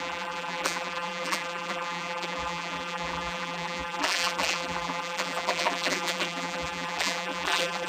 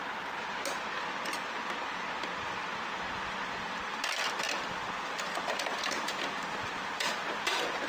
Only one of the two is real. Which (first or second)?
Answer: second